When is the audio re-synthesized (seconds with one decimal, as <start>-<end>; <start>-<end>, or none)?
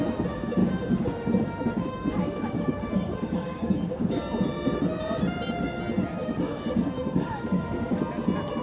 0.6-4.2; 6.2-8.0